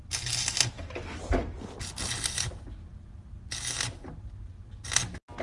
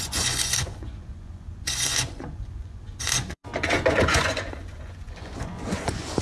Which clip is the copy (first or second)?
second